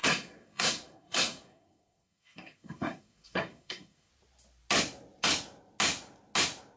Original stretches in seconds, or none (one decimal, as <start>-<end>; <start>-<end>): 4.1-6.8